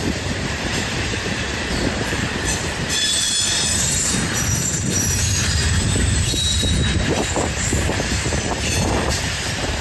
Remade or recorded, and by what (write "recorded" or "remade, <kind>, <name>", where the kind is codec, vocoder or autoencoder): remade, vocoder, BigVGAN v2